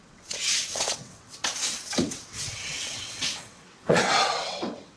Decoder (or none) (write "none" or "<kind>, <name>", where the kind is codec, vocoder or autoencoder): vocoder, WaveNeXt